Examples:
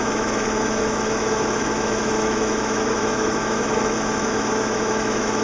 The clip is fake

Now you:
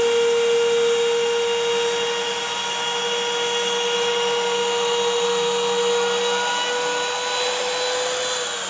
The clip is real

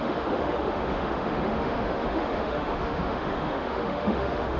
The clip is fake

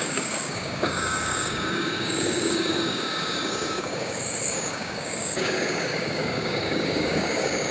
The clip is fake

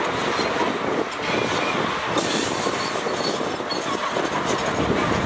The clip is real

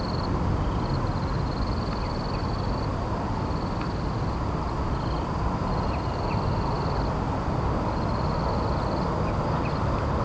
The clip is real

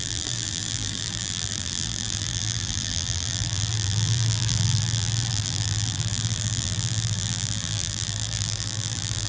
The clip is fake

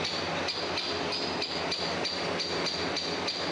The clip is real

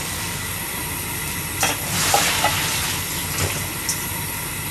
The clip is real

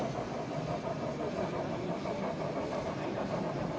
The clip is real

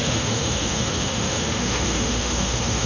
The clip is fake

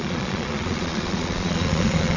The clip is fake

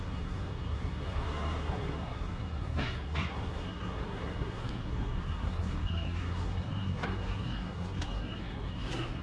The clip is fake